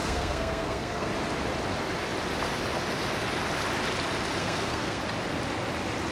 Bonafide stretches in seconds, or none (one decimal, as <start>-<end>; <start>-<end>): 1.1-4.4; 5.0-6.1